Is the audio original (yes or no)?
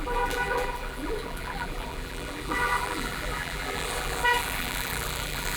no